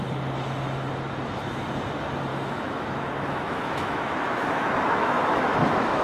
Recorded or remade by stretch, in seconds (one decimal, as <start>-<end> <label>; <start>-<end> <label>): 0.0-2.3 recorded; 2.3-6.0 remade